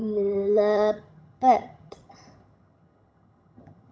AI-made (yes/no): yes